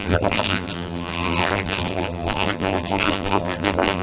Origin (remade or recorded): remade